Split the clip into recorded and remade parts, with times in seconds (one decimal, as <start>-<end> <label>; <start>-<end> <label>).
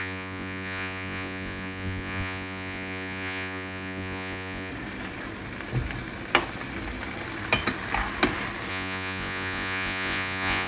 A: 0.0-4.7 remade; 4.7-8.7 recorded; 8.7-10.7 remade